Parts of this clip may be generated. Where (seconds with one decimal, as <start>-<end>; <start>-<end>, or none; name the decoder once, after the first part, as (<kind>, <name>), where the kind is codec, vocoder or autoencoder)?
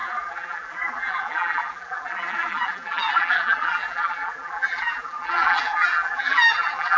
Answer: 0.0-7.0 (vocoder, BigVGAN v2)